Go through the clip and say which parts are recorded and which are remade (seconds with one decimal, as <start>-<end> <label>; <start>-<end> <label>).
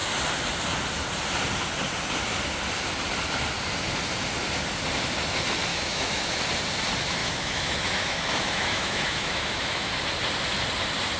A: 0.0-5.7 recorded; 5.7-6.4 remade; 6.4-7.2 recorded; 7.2-9.9 remade; 9.9-11.2 recorded